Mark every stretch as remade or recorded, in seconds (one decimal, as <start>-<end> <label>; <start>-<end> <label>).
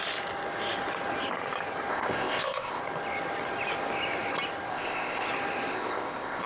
0.0-1.9 recorded; 1.9-2.8 remade; 2.8-4.7 recorded; 4.7-5.3 remade; 5.3-5.7 recorded; 5.7-6.5 remade